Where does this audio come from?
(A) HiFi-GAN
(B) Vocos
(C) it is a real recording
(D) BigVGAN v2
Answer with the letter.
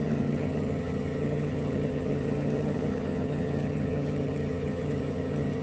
A